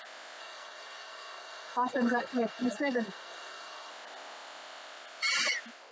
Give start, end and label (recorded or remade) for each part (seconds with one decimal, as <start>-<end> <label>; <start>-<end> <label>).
0.0-0.4 recorded; 0.4-3.9 remade; 3.9-5.9 recorded